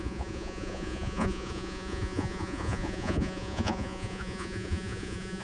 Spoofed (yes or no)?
yes